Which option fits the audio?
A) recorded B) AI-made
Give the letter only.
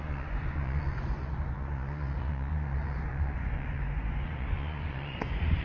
B